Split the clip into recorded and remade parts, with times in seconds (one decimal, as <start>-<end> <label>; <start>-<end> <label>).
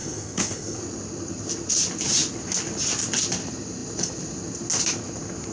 0.0-0.8 remade; 0.8-5.5 recorded